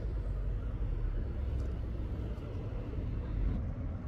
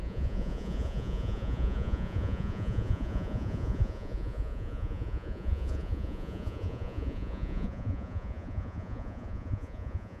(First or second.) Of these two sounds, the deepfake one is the second